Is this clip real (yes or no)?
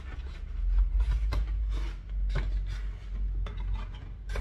yes